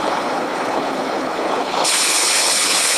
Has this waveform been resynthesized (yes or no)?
yes